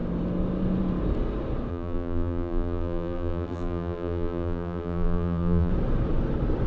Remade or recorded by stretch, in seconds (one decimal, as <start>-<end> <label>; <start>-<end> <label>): 0.0-1.7 recorded; 1.7-5.7 remade; 5.7-6.7 recorded